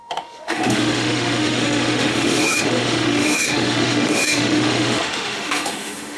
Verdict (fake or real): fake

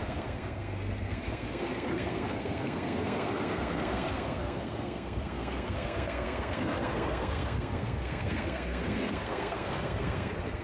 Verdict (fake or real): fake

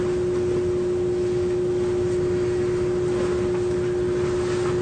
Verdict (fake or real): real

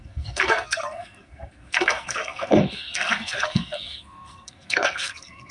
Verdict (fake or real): fake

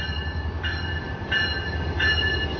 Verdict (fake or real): real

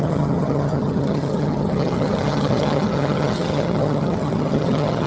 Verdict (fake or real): fake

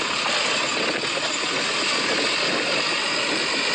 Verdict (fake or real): real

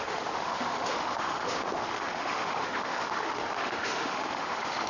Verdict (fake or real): fake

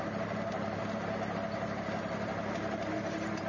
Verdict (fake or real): real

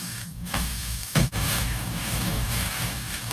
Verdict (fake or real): fake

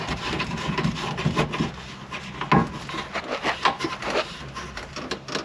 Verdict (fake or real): real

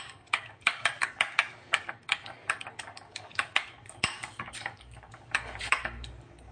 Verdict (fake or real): fake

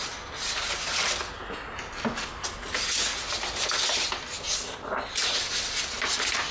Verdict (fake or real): real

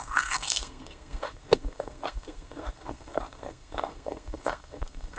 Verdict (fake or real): fake